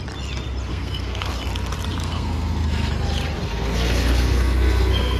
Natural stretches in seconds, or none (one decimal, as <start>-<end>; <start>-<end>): 0.0-0.7; 1.3-2.0; 2.9-3.4